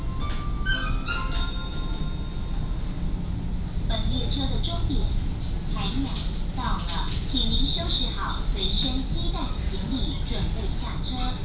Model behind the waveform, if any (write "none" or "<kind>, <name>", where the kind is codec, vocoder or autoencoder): none